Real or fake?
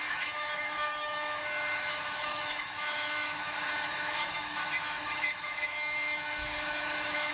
fake